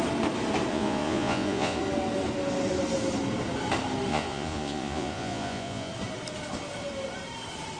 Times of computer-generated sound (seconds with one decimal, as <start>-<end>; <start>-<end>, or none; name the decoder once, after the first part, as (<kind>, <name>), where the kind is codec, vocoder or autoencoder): 0.7-1.8 (vocoder, Vocos); 4.1-5.9

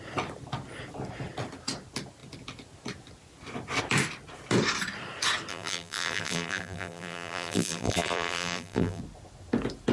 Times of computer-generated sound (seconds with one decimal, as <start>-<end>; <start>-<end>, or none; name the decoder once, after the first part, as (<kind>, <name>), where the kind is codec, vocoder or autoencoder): 5.5-9.0 (vocoder, BigVGAN v2)

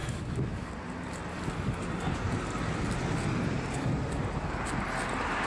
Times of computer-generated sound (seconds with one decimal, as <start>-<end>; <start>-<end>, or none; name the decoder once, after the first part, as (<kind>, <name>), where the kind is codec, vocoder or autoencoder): 0.0-0.7 (autoencoder, DAC-VAE)

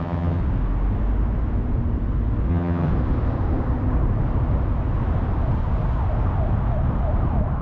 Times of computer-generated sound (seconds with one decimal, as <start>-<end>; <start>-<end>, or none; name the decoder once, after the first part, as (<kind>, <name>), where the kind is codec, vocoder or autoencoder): 0.0-0.4 (vocoder, HiFi-GAN); 2.5-2.9

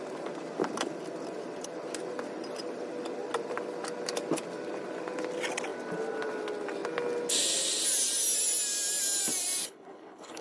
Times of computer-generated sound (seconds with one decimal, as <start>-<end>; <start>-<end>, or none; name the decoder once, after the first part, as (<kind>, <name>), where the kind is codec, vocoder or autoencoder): 9.6-10.4 (codec, HILCodec)

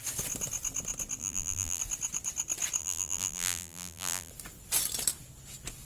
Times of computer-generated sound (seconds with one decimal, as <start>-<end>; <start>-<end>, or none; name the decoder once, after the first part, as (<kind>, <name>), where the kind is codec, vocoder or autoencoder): 1.2-1.8 (vocoder, BigVGAN v2); 2.8-4.3

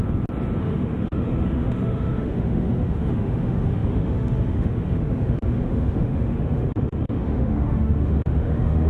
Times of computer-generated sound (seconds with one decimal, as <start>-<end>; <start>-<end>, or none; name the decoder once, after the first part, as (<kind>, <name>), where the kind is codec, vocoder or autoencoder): 0.6-8.9 (autoencoder, DAC-VAE)